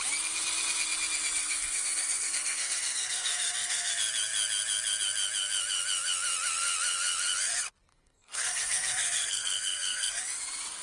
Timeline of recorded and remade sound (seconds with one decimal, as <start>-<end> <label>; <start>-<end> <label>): 0.0-1.4 recorded; 1.4-3.9 remade; 3.9-7.9 recorded; 7.9-10.2 remade; 10.2-10.8 recorded